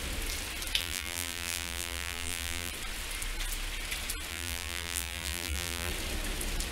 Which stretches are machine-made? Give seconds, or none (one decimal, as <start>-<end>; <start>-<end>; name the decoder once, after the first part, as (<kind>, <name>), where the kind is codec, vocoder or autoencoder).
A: 0.8-2.7 (vocoder, BigVGAN v2); 4.3-5.9